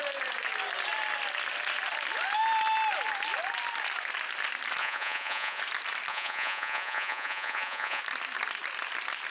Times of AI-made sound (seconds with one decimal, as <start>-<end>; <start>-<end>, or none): 4.8-5.6; 6.1-8.0